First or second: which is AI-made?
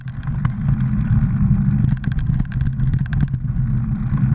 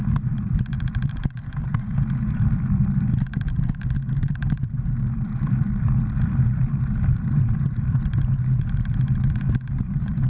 second